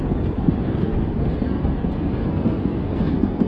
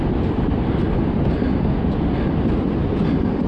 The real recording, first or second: second